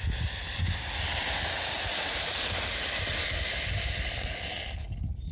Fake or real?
real